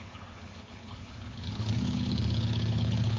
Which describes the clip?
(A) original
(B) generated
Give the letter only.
B